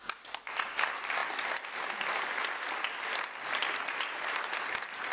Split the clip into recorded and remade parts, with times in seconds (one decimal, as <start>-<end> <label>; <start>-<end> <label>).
0.0-5.1 recorded